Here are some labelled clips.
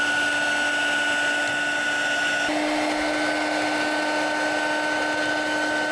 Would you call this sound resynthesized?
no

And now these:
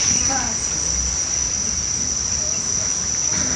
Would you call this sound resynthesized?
no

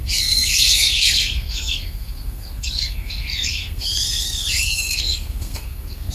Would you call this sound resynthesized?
yes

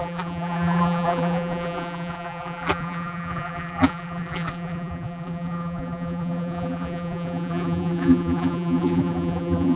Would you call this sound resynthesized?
yes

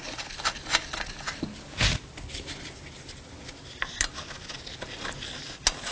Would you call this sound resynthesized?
no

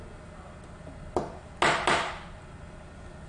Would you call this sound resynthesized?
no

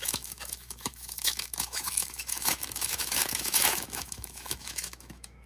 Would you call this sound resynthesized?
yes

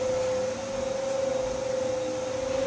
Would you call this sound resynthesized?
no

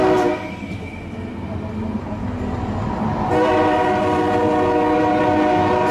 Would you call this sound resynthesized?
no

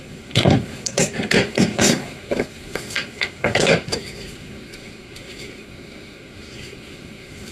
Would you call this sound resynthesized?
yes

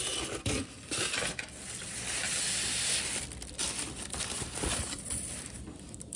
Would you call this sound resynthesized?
yes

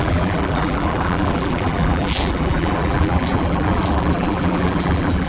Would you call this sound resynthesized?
yes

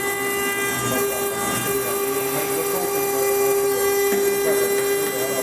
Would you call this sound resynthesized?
no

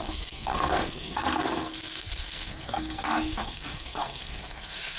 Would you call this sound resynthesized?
yes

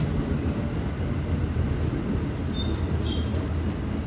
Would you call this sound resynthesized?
no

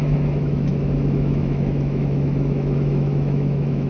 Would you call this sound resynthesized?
yes